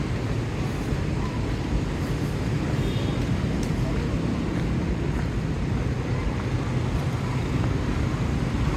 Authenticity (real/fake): real